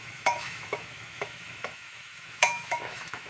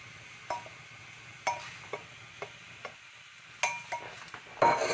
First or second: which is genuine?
second